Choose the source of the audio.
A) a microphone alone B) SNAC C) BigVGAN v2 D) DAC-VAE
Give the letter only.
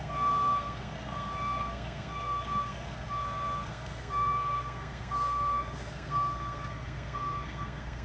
B